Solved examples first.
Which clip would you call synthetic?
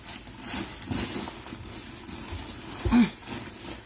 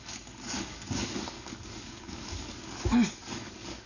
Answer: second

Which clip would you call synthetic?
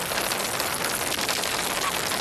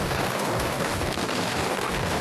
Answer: second